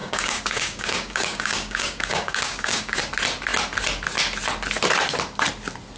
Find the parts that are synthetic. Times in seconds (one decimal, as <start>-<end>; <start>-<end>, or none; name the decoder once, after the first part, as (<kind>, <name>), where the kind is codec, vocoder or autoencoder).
0.0-3.0 (codec, DAC)